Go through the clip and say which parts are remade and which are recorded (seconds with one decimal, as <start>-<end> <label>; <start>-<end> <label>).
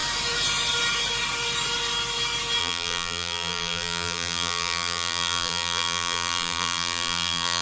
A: 0.0-2.6 recorded; 2.6-7.6 remade